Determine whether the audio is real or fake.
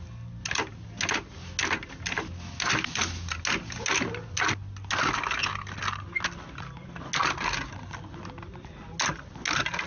real